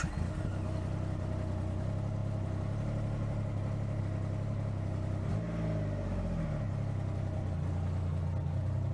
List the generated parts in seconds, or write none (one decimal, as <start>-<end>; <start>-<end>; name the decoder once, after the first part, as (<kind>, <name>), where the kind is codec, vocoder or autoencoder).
none